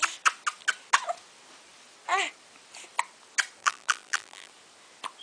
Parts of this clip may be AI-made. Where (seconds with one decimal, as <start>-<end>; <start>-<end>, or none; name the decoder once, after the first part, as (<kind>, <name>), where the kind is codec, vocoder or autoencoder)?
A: 3.6-4.5 (vocoder, BigVGAN v2)